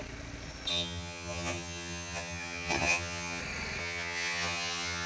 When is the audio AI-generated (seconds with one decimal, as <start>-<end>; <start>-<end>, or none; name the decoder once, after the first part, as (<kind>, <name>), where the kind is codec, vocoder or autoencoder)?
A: 0.7-3.4 (vocoder, HiFi-GAN); 3.8-5.1